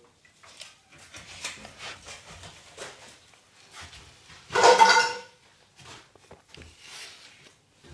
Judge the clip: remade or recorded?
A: recorded